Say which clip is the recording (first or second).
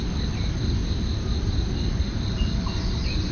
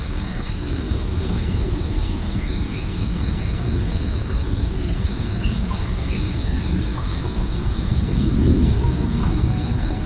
first